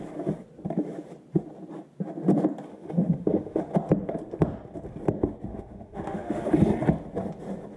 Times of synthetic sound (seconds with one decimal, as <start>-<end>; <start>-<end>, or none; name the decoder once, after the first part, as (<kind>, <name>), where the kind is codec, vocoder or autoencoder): 2.7-3.6 (autoencoder, DAC-VAE); 5.5-6.4